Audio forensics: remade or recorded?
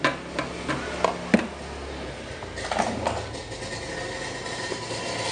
recorded